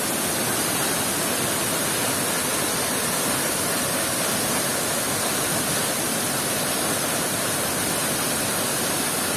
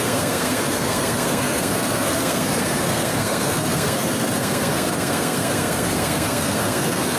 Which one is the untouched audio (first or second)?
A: first